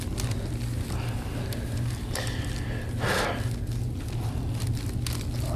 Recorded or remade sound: recorded